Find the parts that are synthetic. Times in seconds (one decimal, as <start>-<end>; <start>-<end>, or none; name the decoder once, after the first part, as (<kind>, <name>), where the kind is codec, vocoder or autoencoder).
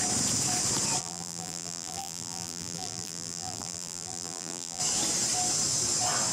1.0-4.8 (vocoder, BigVGAN v2)